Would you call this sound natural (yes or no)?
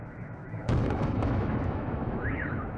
no